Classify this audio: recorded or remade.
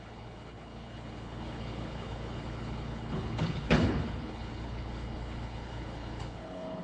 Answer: remade